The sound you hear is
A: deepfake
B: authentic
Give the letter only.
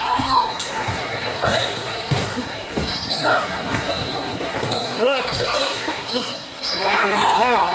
A